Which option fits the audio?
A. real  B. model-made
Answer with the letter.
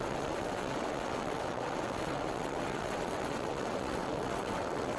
B